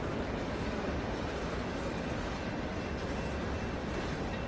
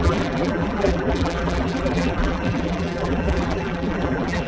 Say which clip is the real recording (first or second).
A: first